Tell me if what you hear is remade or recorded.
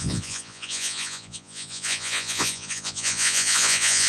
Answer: remade